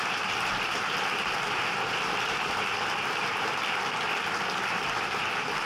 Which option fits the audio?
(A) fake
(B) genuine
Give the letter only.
B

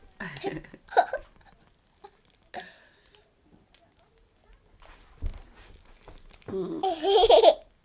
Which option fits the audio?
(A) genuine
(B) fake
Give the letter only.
A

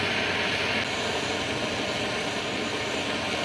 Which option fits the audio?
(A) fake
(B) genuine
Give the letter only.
B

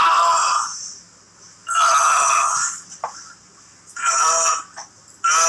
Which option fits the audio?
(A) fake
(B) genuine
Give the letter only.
B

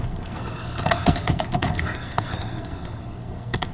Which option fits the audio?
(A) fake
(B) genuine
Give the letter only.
A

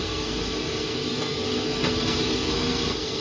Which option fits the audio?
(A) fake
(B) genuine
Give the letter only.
A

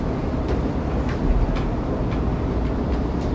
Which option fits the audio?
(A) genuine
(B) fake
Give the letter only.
A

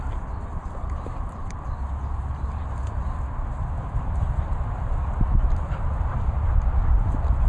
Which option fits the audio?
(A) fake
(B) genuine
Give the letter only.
B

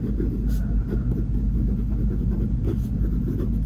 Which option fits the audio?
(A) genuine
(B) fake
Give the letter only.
A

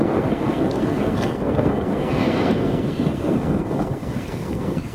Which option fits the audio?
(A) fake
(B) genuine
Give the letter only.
A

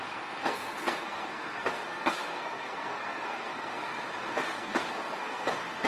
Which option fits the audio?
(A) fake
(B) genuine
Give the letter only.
A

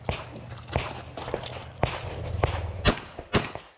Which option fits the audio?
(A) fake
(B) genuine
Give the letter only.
B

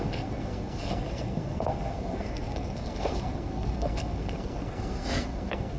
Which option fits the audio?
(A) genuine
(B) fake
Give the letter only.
B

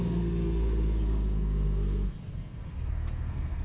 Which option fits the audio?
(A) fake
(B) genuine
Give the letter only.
A